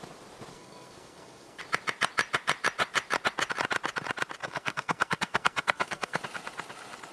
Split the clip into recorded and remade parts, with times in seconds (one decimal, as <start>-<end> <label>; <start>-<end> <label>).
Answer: 0.0-0.5 recorded; 0.5-1.6 remade; 1.6-4.4 recorded; 4.4-6.2 remade; 6.2-7.1 recorded